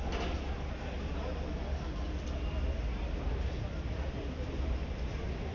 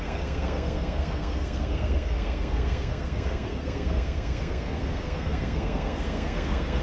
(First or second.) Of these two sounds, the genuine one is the first